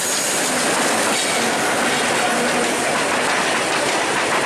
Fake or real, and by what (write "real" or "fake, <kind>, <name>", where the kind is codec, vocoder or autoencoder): real